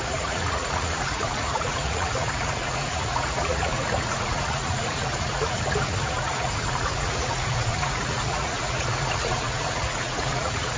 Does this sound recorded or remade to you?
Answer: remade